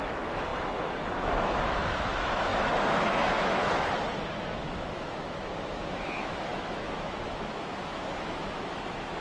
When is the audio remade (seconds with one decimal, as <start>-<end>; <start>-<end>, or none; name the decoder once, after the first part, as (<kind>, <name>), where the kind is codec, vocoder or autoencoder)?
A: 0.0-9.2 (autoencoder, DAC-VAE)